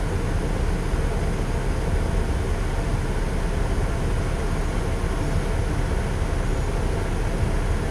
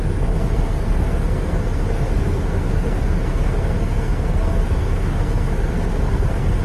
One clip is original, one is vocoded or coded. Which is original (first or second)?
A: first